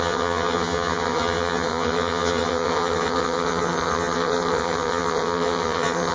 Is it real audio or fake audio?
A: fake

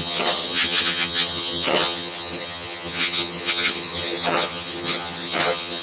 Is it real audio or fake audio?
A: fake